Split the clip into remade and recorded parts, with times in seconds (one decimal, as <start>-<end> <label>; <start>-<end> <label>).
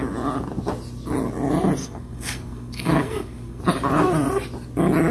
0.0-1.8 recorded; 1.8-3.6 remade; 3.6-5.1 recorded